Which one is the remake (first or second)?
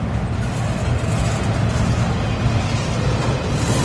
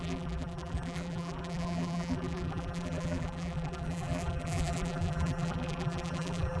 second